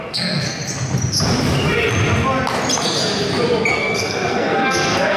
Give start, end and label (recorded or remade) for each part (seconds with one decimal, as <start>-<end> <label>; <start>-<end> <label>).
0.0-0.6 remade; 0.6-3.7 recorded; 3.7-5.2 remade